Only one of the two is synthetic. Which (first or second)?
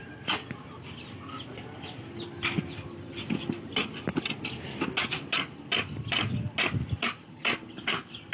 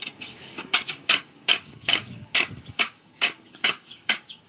second